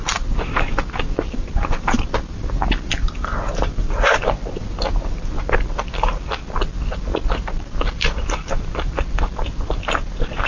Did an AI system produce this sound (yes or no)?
no